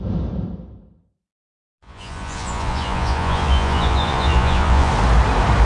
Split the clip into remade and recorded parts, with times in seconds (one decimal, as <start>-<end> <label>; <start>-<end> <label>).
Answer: 0.0-1.5 recorded; 1.5-4.9 remade; 4.9-5.7 recorded